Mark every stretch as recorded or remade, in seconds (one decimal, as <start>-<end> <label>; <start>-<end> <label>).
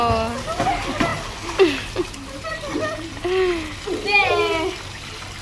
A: 0.0-5.4 recorded